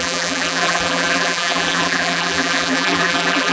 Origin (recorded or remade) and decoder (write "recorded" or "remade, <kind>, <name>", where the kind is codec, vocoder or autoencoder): remade, vocoder, BigVGAN v2